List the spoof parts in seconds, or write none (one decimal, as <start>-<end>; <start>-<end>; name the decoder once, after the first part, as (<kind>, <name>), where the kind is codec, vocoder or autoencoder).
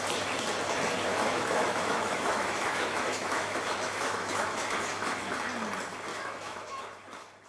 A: 1.1-5.3 (autoencoder, DAC-VAE); 6.1-6.8